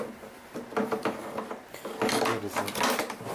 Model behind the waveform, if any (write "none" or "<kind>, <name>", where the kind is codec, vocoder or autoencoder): none